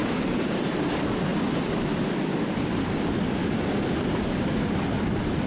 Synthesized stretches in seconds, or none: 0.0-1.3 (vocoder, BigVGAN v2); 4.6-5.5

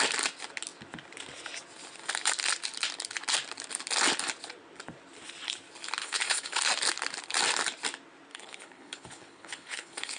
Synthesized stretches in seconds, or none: 6.0-6.6 (codec, HILCodec); 8.3-10.2

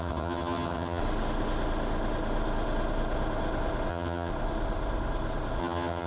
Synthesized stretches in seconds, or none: 0.0-1.0 (vocoder, HiFi-GAN); 3.9-4.3; 5.6-6.1

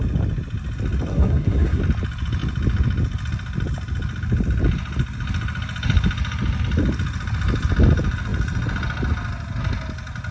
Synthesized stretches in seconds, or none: 1.1-1.8 (codec, SNAC)